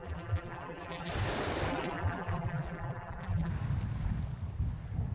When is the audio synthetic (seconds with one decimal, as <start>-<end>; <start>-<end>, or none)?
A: 0.0-1.1; 1.7-3.5